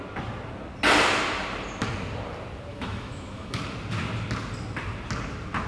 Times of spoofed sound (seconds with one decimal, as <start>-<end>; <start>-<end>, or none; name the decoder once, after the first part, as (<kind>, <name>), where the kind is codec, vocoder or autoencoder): 2.7-3.6 (autoencoder, DAC-VAE)